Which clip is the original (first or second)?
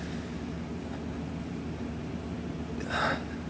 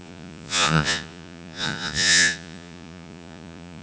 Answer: first